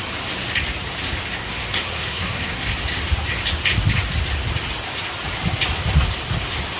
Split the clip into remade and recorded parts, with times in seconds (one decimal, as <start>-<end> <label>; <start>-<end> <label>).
0.0-1.4 recorded; 1.4-2.7 remade; 2.7-6.8 recorded